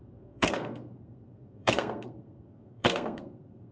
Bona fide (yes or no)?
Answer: no